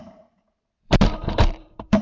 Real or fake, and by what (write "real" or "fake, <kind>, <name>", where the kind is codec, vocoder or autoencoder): fake, vocoder, BigVGAN v2